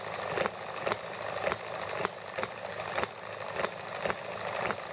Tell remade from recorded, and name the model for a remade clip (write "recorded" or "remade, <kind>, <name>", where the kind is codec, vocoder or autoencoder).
recorded